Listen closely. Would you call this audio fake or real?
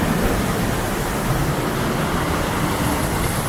real